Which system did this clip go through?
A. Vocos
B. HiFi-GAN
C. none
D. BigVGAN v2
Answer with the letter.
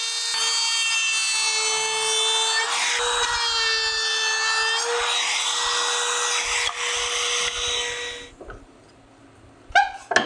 C